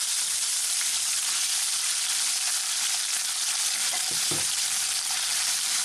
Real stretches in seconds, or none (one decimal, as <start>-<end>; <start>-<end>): 0.0-3.8